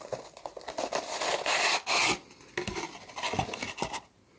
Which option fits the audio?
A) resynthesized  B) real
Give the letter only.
B